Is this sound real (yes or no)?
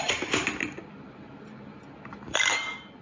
no